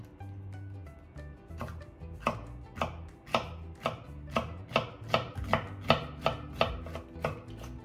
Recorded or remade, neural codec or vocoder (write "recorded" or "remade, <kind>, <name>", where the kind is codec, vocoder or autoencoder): recorded